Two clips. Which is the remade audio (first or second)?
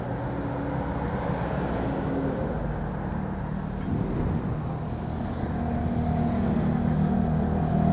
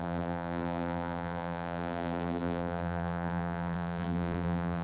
second